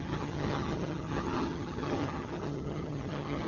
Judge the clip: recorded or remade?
remade